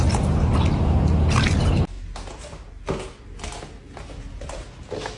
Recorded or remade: recorded